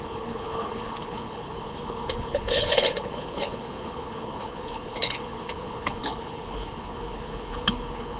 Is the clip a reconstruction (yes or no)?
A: yes